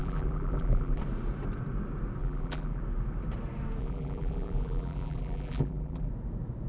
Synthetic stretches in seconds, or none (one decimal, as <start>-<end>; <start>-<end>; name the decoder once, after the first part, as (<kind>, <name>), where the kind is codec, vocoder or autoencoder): 0.0-1.0 (vocoder, BigVGAN v2); 2.2-2.8; 3.8-6.1